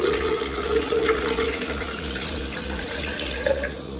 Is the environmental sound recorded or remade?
remade